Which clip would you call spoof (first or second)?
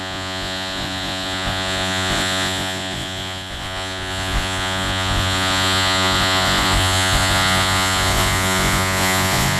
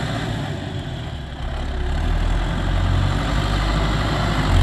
first